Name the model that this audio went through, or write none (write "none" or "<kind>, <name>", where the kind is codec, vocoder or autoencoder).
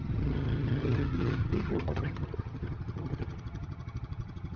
vocoder, HiFi-GAN